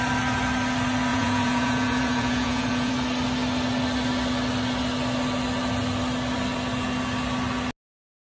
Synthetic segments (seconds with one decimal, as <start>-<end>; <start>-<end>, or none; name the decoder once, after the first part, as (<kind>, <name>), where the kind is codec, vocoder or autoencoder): 1.1-2.9 (vocoder, Vocos)